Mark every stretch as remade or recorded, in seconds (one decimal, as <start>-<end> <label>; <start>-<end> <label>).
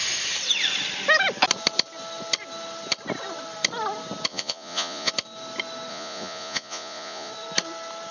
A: 0.0-4.3 recorded; 4.3-5.1 remade; 5.1-5.9 recorded; 5.9-7.3 remade; 7.3-8.1 recorded